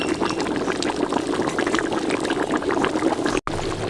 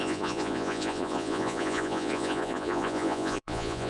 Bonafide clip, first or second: first